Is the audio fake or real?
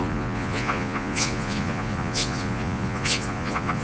fake